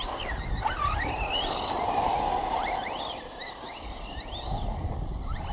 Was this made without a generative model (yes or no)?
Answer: yes